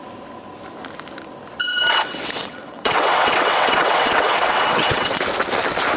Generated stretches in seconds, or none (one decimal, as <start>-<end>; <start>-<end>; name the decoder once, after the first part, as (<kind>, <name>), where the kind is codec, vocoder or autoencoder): 1.6-5.2 (vocoder, WaveNeXt)